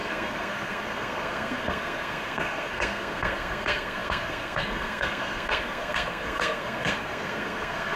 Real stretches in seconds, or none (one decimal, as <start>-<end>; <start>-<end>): none